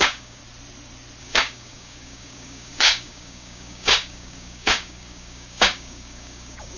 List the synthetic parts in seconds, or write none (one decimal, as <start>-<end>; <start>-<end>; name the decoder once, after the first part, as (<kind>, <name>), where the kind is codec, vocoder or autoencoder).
0.0-0.4 (codec, DAC); 1.2-6.8